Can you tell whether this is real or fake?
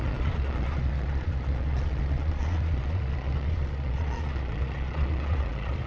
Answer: fake